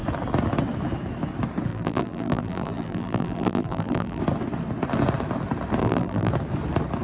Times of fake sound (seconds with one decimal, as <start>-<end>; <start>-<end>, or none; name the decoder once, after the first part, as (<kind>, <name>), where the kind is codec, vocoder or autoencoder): 1.7-4.2 (vocoder, BigVGAN v2); 5.8-6.3